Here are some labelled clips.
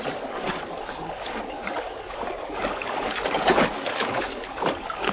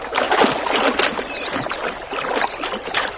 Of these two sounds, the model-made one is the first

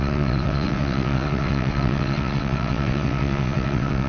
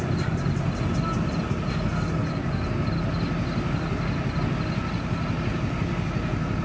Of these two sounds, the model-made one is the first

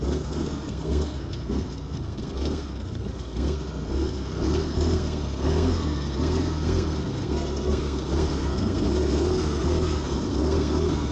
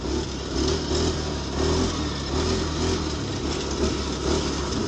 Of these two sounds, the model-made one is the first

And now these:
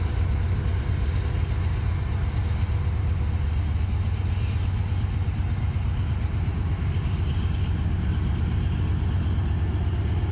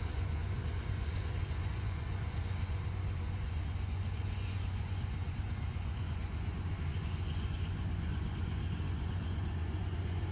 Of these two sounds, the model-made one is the second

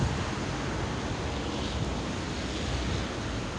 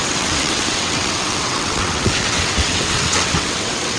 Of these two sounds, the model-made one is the second